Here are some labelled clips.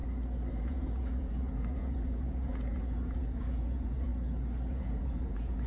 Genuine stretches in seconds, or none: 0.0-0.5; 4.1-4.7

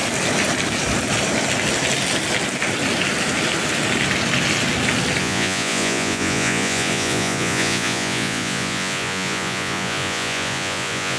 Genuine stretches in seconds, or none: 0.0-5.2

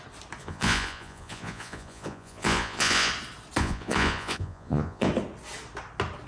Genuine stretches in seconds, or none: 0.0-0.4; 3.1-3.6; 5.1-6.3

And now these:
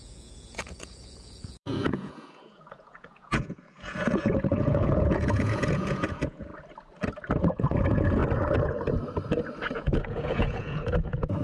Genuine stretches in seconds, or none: 6.5-7.5; 8.2-9.7

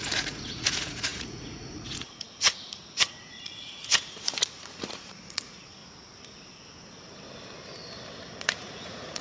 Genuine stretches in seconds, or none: 5.8-8.3

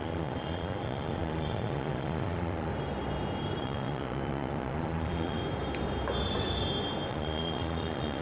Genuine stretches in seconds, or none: 2.7-3.6; 5.4-7.1